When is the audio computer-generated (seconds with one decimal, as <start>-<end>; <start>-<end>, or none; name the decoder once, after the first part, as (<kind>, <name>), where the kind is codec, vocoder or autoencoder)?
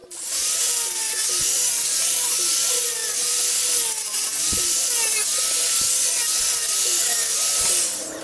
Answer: none